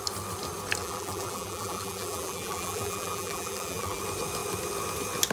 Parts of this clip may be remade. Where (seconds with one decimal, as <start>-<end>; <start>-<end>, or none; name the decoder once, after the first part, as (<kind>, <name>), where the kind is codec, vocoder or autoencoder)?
0.8-4.0 (vocoder, BigVGAN v2)